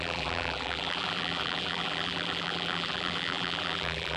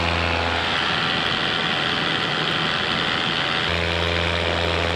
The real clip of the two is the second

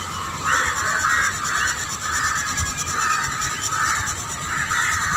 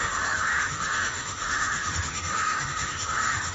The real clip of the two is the first